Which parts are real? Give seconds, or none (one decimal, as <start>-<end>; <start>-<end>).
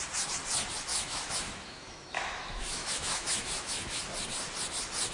0.0-0.9; 4.0-5.1